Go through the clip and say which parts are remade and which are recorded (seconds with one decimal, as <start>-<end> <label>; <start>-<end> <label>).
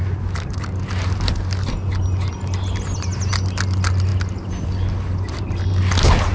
0.0-6.3 recorded